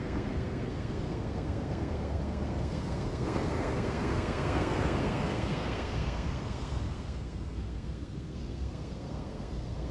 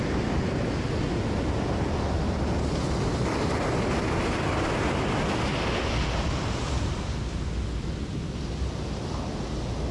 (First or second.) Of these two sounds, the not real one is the first